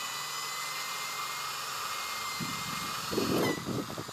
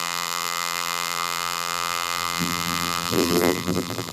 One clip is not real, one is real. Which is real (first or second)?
first